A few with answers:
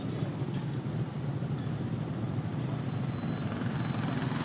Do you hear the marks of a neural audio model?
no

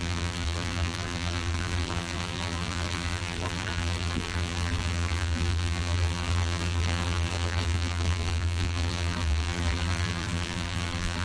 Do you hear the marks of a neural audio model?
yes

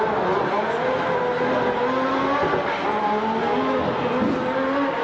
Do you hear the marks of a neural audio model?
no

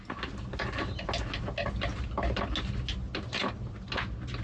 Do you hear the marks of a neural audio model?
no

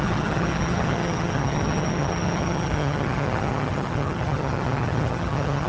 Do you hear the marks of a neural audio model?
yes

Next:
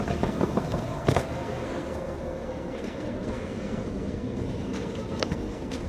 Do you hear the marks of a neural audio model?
yes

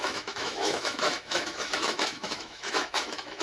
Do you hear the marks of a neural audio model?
yes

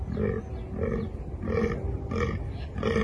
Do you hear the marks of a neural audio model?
no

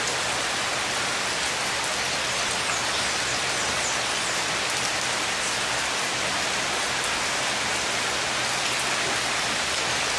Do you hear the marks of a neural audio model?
no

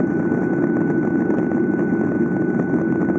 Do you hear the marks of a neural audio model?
no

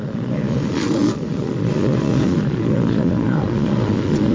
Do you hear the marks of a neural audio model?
yes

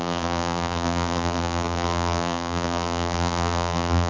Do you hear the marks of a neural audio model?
yes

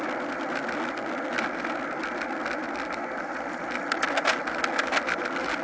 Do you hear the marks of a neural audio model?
no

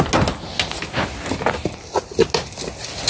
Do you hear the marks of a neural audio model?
no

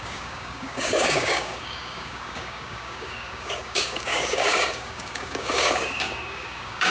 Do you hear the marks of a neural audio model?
yes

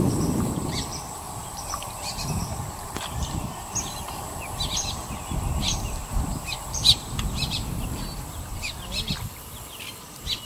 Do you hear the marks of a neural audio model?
yes